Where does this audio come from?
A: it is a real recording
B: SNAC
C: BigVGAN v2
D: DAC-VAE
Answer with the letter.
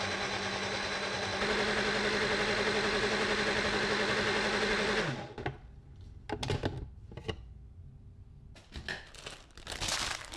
A